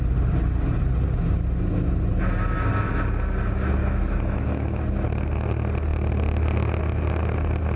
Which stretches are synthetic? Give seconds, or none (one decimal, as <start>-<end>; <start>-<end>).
3.8-4.8